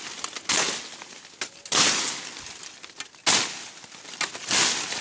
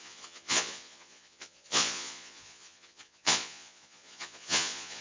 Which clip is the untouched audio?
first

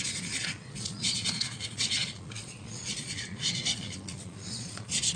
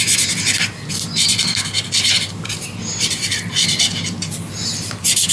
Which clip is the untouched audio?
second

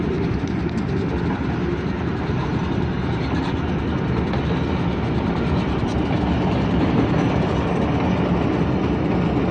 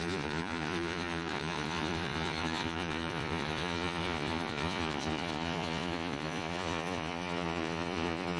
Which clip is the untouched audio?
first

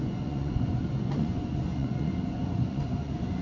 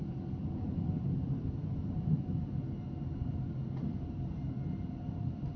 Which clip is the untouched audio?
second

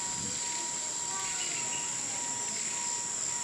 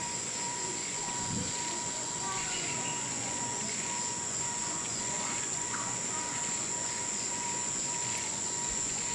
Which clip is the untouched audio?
first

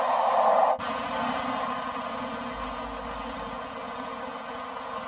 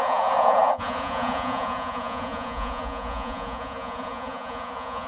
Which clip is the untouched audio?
first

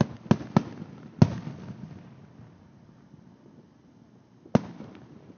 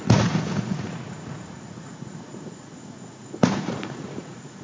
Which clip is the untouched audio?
first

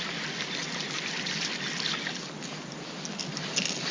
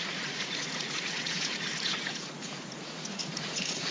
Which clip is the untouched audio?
first